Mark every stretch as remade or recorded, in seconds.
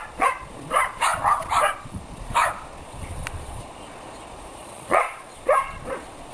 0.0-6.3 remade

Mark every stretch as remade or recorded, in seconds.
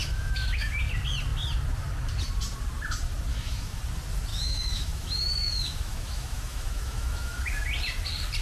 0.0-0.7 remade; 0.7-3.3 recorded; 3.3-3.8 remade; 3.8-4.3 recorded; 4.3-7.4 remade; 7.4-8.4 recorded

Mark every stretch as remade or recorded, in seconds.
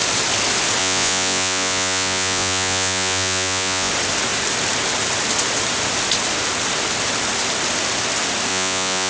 0.0-0.8 recorded; 0.8-3.9 remade; 3.9-8.5 recorded; 8.5-9.1 remade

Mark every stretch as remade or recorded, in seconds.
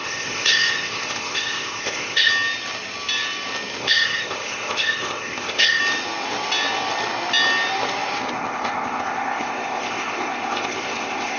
0.0-2.3 remade; 2.3-3.8 recorded; 3.8-5.8 remade; 5.8-8.3 recorded; 8.3-11.4 remade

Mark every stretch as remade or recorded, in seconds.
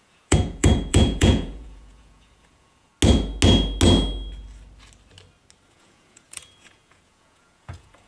0.0-2.9 remade; 2.9-5.7 recorded; 5.7-8.1 remade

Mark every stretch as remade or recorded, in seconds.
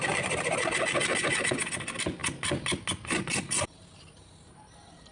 0.0-5.1 recorded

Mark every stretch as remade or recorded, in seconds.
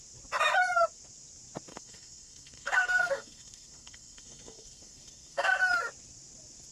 0.0-1.7 recorded; 1.7-5.6 remade; 5.6-6.7 recorded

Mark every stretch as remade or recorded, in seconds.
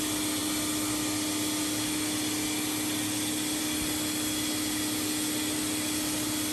0.0-6.5 recorded